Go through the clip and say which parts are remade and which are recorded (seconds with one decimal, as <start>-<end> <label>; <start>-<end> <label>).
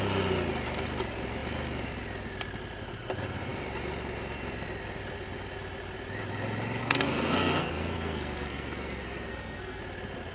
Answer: 0.0-6.8 recorded; 6.8-9.8 remade; 9.8-10.3 recorded